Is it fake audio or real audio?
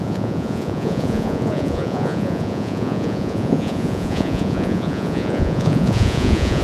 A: fake